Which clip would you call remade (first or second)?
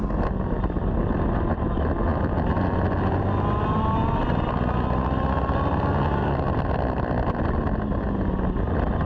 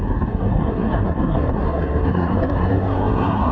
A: second